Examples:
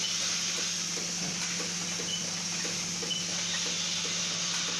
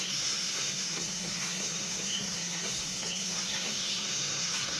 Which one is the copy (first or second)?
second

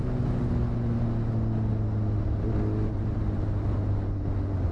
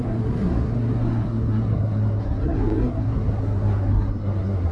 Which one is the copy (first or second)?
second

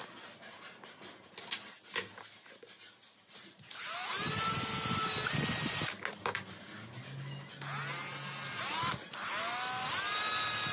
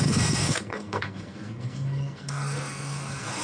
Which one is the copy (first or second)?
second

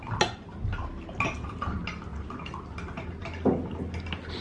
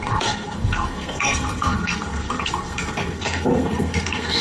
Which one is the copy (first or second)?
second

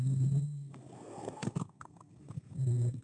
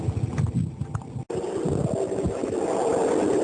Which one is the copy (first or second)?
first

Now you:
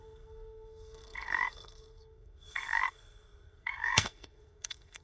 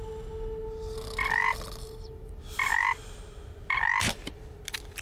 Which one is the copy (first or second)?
first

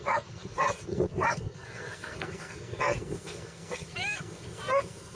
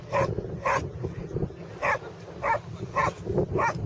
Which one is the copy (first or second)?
first